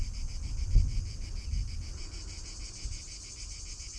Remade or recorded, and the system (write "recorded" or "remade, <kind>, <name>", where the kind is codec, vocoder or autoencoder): recorded